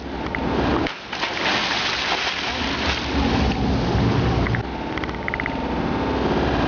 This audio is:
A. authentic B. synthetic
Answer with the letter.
A